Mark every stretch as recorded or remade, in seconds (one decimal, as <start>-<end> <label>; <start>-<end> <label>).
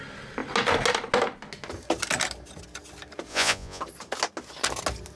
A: 0.0-3.3 recorded; 3.3-3.8 remade; 3.8-5.2 recorded